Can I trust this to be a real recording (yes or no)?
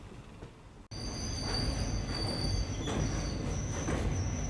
yes